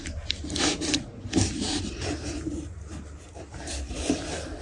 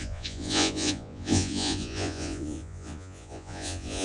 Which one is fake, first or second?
second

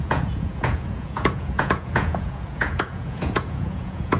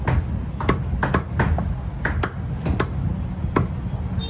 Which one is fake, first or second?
first